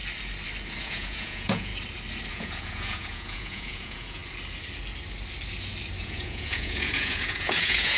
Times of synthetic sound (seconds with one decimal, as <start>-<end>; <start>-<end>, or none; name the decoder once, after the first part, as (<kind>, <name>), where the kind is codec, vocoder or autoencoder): 0.8-1.7 (vocoder, Vocos); 2.3-4.2; 6.0-8.0